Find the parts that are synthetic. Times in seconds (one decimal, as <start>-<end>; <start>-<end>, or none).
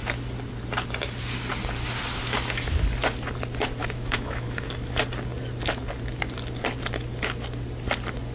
3.8-4.7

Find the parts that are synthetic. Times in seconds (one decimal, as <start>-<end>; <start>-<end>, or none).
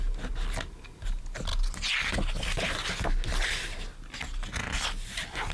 none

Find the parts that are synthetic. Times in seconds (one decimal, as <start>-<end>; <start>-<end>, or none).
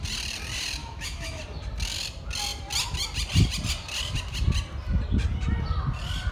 0.8-1.4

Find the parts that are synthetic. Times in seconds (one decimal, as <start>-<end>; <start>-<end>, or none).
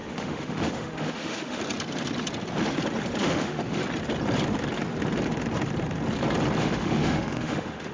0.0-1.6; 3.2-3.8; 6.6-7.9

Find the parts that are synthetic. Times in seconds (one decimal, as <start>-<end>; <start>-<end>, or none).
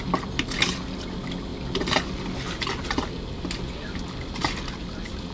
none